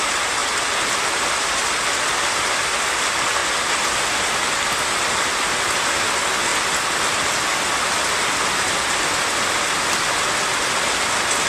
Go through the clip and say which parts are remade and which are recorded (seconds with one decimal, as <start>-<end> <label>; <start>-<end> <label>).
0.0-11.5 recorded